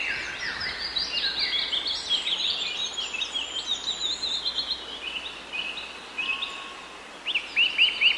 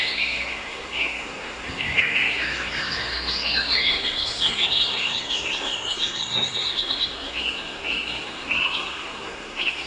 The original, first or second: first